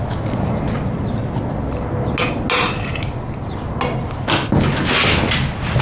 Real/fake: real